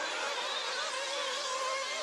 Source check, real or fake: real